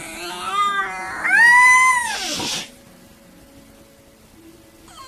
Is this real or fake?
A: real